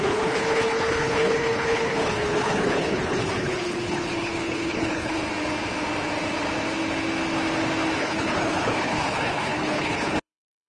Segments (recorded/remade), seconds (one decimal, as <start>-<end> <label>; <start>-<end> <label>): 0.0-5.2 remade; 5.2-8.0 recorded; 8.0-10.7 remade

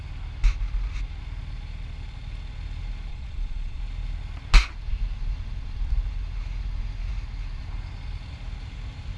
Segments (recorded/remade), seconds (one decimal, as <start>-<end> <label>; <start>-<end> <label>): 0.0-3.1 recorded; 3.1-3.8 remade; 3.8-9.2 recorded

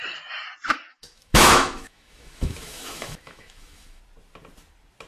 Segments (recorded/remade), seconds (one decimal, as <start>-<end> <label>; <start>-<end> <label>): 0.0-0.9 recorded; 0.9-4.0 remade; 4.0-5.1 recorded

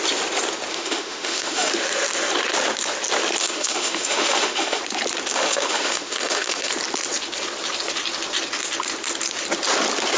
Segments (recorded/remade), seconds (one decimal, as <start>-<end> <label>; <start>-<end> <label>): 0.0-0.7 recorded; 0.7-1.7 remade; 1.7-3.4 recorded; 3.4-4.8 remade; 4.8-5.3 recorded; 5.3-6.7 remade; 6.7-10.2 recorded